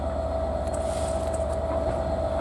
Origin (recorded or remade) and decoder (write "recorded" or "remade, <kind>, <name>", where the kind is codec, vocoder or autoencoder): recorded